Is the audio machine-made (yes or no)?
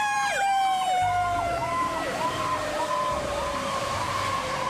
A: yes